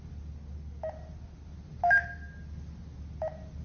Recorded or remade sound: recorded